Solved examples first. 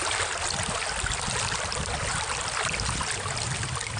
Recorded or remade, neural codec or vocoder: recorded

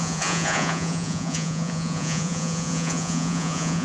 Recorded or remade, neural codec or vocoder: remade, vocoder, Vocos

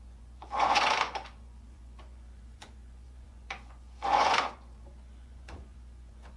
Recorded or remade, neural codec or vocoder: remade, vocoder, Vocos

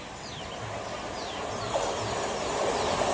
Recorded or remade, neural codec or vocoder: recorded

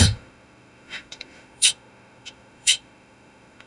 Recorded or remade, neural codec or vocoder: remade, autoencoder, DAC-VAE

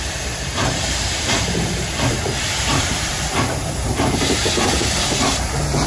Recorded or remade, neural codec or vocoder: remade, vocoder, BigVGAN v2